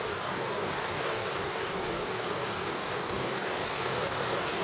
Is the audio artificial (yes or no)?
yes